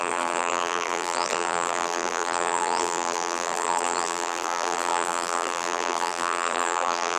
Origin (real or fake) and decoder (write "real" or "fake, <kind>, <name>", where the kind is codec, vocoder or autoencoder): fake, vocoder, BigVGAN v2